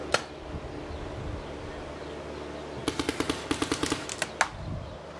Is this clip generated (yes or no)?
no